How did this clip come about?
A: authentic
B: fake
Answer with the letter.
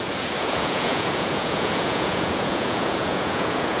B